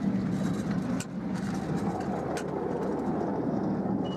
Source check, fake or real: real